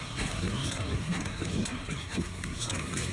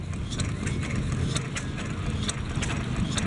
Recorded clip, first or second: second